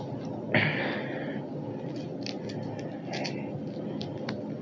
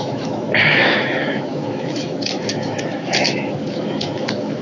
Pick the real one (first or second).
first